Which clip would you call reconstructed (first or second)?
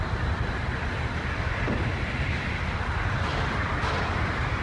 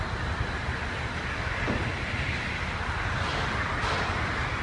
first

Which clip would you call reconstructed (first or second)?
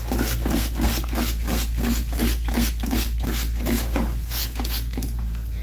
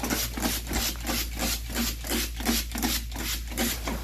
first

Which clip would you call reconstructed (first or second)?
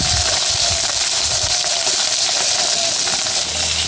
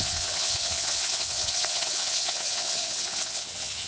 second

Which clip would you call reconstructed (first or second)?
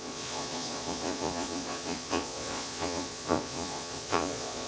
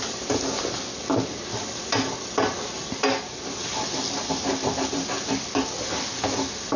first